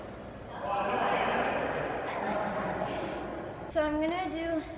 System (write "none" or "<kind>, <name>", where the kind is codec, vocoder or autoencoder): none